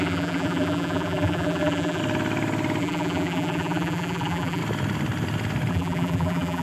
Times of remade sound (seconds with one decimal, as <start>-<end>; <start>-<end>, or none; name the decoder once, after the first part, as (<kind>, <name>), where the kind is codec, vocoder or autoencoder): 0.0-2.0 (vocoder, BigVGAN v2); 2.8-4.6; 5.7-6.6